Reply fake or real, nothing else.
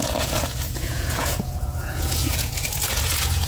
fake